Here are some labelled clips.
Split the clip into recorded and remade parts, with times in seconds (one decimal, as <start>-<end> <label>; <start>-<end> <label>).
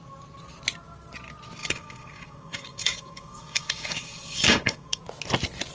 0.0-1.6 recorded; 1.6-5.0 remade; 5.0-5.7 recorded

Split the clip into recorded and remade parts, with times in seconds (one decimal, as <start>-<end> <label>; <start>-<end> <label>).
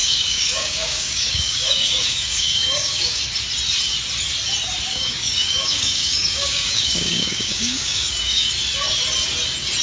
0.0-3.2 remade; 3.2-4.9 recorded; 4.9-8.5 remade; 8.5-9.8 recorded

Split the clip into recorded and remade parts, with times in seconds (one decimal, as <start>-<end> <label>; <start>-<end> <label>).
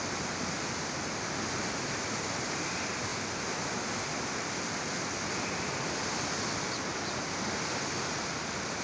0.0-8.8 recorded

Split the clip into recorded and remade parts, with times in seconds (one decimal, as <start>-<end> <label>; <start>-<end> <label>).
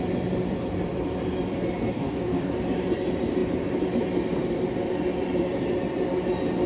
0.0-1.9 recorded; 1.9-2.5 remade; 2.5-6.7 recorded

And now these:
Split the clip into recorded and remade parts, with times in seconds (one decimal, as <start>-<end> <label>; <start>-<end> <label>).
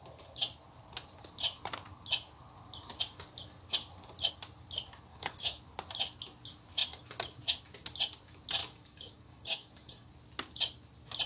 0.0-5.1 recorded; 5.1-5.6 remade; 5.6-8.6 recorded; 8.6-10.1 remade; 10.1-11.3 recorded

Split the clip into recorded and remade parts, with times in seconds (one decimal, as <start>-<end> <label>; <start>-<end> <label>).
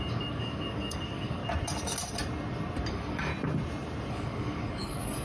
0.0-1.4 remade; 1.4-2.9 recorded; 2.9-3.3 remade; 3.3-4.1 recorded; 4.1-5.2 remade